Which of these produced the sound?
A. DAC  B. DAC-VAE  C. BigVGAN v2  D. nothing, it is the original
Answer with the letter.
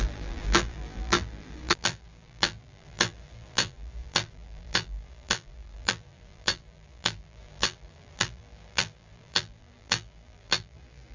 C